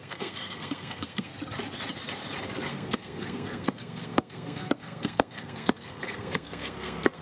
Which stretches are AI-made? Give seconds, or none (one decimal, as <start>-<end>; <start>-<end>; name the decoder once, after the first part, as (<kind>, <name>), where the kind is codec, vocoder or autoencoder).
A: 0.0-1.3 (codec, SNAC); 2.7-7.2